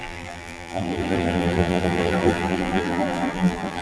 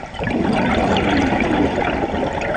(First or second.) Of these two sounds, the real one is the second